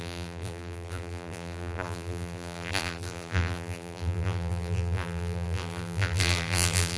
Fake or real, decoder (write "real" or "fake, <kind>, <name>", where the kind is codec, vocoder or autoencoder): fake, vocoder, BigVGAN v2